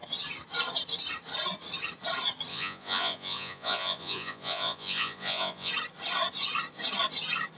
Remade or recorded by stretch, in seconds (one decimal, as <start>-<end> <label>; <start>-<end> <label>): 0.0-2.5 recorded; 2.5-5.7 remade; 5.7-7.6 recorded